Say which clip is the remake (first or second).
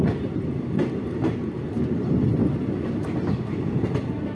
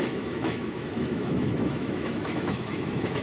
second